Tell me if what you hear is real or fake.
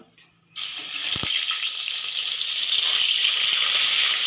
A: real